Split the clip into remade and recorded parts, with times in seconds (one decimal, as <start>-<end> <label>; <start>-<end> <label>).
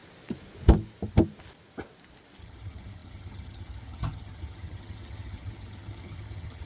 0.0-2.4 recorded; 2.4-6.7 remade